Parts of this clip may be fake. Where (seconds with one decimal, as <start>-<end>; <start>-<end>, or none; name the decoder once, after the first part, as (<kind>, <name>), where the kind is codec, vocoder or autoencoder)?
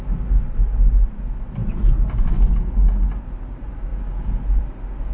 none